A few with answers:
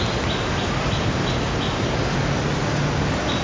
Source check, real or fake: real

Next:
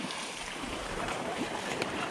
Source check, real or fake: fake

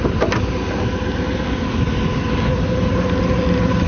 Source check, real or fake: real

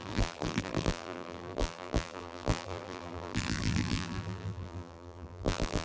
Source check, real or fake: fake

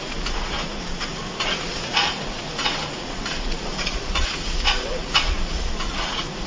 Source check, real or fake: fake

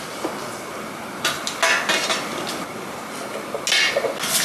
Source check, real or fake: real